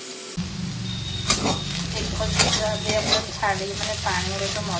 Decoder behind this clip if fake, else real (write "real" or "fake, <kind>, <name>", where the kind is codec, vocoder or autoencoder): real